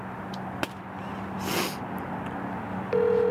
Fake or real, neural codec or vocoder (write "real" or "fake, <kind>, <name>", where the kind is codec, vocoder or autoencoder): real